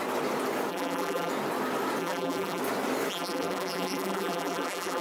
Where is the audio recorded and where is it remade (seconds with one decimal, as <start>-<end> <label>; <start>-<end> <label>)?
0.0-0.7 recorded; 0.7-1.3 remade; 1.3-2.0 recorded; 2.0-2.6 remade; 2.6-3.1 recorded; 3.1-5.0 remade